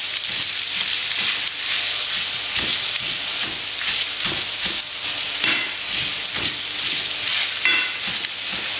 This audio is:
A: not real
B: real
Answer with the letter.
B